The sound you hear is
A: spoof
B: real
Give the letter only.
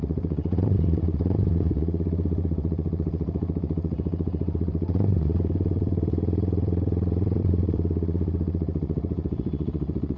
A